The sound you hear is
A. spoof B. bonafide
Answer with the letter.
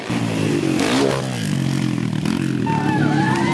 B